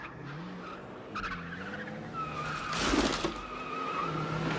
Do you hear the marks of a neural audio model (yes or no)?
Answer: no